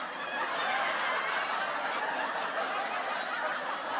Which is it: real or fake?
real